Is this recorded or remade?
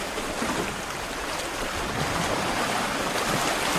recorded